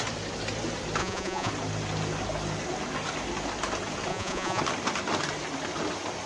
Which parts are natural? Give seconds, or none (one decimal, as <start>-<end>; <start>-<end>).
0.0-1.0; 1.5-4.1; 4.6-6.3